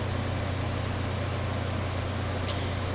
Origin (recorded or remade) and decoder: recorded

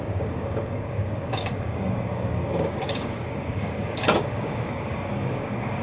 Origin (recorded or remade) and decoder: remade, codec, DAC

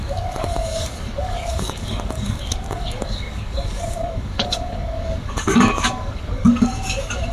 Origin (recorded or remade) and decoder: remade, codec, DAC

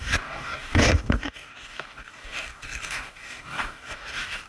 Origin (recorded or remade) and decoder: remade, codec, DAC